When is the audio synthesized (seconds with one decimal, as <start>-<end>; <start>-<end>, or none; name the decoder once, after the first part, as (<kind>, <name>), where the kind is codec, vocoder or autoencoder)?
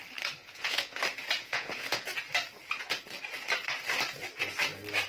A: 0.4-1.0 (vocoder, Vocos); 1.4-2.1